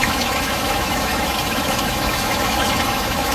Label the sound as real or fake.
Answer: fake